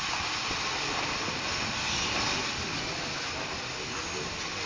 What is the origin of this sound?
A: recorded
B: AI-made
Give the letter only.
A